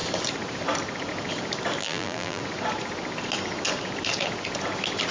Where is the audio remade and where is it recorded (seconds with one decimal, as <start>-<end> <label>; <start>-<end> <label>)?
0.0-1.8 recorded; 1.8-2.4 remade; 2.4-5.1 recorded